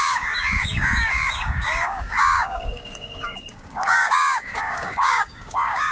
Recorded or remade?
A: remade